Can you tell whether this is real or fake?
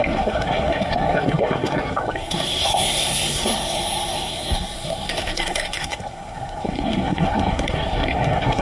fake